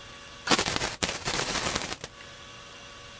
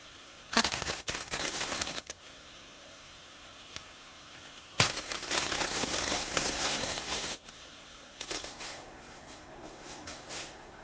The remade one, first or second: second